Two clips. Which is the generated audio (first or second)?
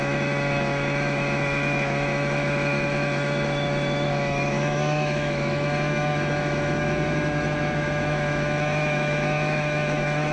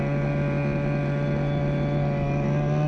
first